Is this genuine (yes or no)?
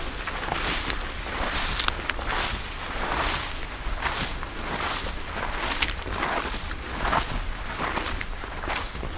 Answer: yes